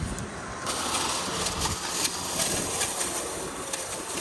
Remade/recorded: recorded